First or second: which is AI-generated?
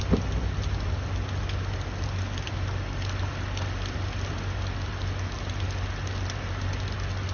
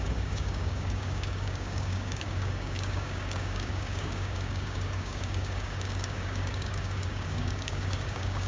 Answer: second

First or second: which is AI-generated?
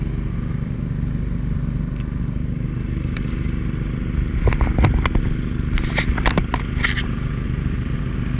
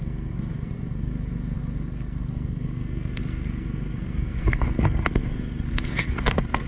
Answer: second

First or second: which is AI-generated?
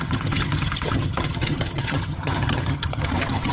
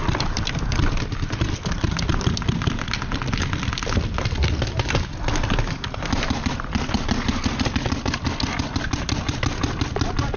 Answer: first